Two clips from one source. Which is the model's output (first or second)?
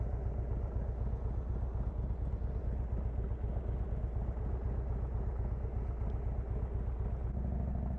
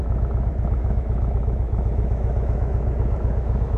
second